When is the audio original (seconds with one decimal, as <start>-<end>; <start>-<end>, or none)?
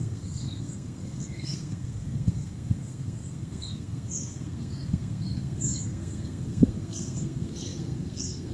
none